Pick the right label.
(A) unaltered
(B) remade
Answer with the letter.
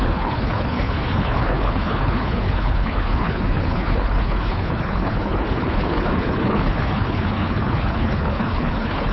B